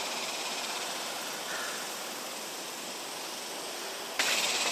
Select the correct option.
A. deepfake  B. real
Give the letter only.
B